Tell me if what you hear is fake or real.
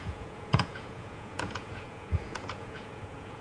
fake